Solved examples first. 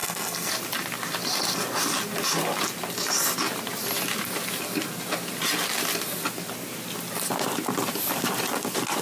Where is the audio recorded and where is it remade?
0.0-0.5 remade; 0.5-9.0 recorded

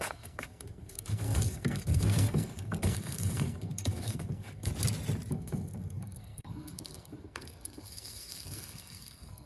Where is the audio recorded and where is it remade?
0.0-4.7 remade; 4.7-5.3 recorded; 5.3-9.5 remade

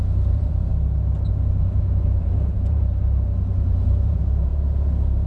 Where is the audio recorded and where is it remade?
0.0-0.7 remade; 0.7-1.3 recorded; 1.3-2.8 remade; 2.8-3.5 recorded; 3.5-4.5 remade; 4.5-5.3 recorded

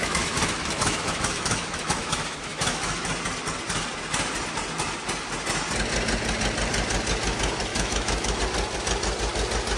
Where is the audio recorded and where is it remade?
0.0-3.1 remade; 3.1-7.7 recorded; 7.7-8.4 remade; 8.4-9.8 recorded

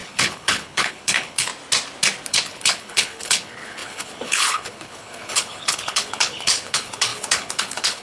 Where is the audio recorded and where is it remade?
0.0-1.5 remade; 1.5-2.3 recorded; 2.3-8.0 remade

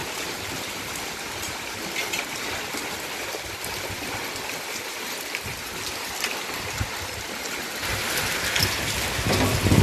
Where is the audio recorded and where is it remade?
0.0-0.5 remade; 0.5-9.8 recorded